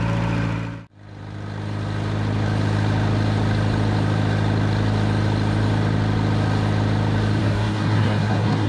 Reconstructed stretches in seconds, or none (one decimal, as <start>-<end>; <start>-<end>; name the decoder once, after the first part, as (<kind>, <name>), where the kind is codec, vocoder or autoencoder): 7.4-8.7 (codec, SNAC)